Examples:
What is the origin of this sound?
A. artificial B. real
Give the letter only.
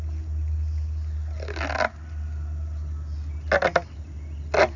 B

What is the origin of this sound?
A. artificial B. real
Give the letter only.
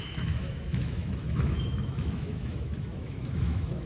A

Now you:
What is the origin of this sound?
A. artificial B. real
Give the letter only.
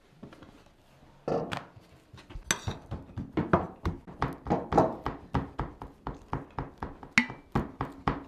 B